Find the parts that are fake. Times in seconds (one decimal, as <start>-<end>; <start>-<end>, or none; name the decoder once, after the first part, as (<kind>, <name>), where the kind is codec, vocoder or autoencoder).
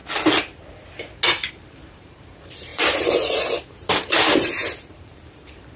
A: 1.5-5.8 (vocoder, BigVGAN v2)